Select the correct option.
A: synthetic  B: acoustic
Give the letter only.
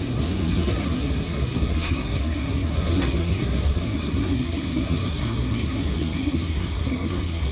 A